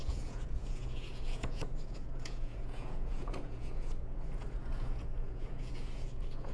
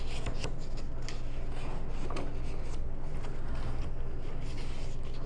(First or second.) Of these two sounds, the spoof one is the first